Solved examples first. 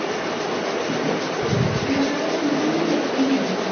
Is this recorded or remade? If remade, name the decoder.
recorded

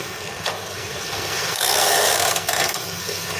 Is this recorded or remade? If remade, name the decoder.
remade, codec, SNAC